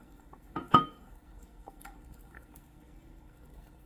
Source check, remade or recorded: remade